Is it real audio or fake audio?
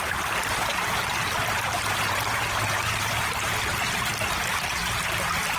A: fake